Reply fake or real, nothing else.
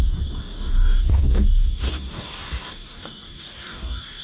fake